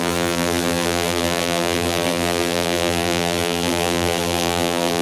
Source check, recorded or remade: remade